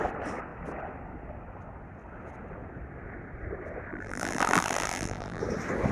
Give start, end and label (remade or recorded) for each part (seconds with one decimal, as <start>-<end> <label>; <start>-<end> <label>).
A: 0.0-3.9 recorded; 3.9-5.4 remade; 5.4-5.9 recorded